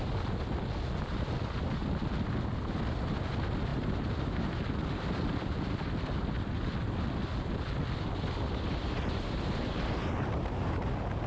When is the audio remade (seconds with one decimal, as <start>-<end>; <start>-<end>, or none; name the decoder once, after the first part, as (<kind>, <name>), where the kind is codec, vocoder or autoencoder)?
none